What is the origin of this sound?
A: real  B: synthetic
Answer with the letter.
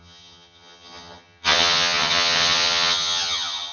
B